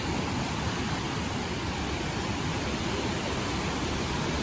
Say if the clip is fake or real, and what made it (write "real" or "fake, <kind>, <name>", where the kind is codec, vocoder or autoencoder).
fake, vocoder, BigVGAN v2